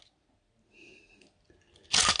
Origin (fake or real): real